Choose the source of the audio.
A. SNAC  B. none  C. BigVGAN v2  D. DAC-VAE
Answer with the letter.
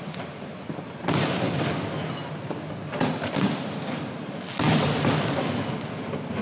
B